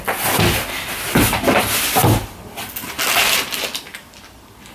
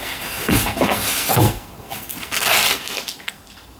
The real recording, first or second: first